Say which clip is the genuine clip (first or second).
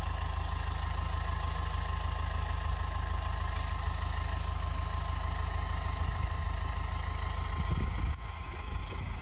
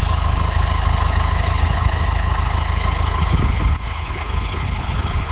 first